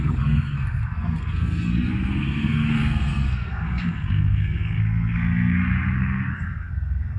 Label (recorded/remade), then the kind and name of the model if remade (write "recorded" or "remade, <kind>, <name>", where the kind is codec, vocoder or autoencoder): remade, codec, SNAC